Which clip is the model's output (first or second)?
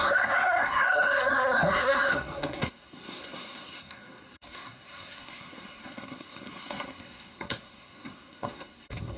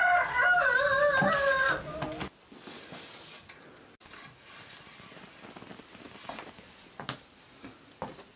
first